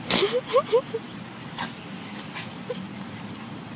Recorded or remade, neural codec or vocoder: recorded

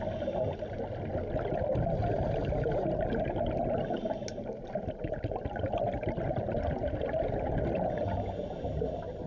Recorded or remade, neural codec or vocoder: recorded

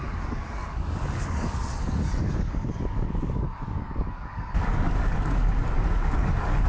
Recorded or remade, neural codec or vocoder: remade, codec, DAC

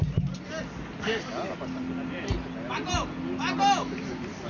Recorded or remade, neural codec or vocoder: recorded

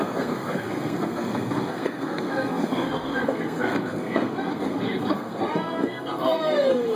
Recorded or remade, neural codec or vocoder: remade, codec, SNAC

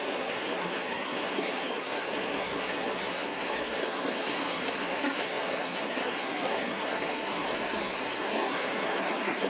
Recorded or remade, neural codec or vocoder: remade, codec, SNAC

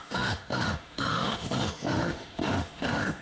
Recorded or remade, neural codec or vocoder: remade, autoencoder, DAC-VAE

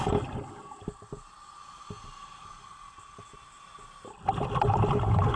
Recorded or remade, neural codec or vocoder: recorded